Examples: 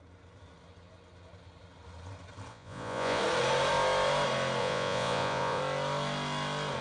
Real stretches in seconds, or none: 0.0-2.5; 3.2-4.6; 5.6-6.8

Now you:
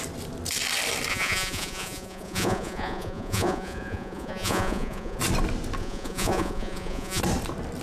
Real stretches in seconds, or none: 0.0-1.1; 5.2-5.8; 7.2-7.8